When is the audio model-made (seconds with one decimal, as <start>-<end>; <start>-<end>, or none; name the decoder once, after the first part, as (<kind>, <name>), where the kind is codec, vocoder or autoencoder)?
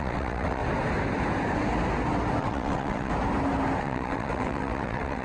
0.0-0.6 (vocoder, WaveNeXt); 2.4-3.1; 3.8-5.2